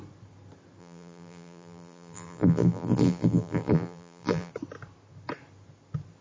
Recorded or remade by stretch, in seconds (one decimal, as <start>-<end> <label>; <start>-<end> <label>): 0.0-0.8 recorded; 0.8-4.5 remade; 4.5-6.2 recorded